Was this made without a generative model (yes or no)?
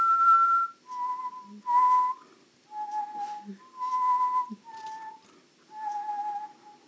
yes